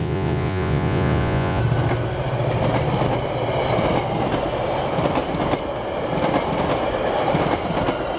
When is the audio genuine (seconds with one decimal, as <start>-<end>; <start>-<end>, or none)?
1.6-8.2